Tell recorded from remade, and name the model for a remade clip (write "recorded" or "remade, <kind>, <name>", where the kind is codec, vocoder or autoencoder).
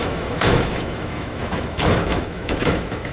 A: remade, autoencoder, DAC-VAE